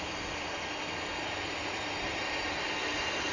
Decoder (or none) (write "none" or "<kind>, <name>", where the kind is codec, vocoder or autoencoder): none